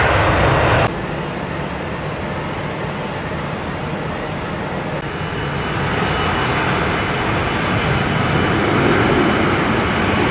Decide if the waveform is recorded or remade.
recorded